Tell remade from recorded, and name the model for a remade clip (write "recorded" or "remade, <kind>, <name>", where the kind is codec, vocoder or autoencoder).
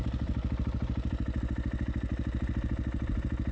recorded